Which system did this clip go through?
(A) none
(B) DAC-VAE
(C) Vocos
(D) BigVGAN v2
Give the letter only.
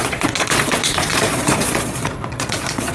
C